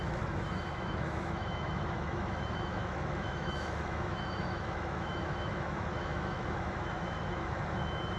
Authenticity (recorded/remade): remade